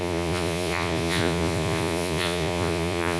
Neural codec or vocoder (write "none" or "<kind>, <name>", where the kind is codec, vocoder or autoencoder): vocoder, Vocos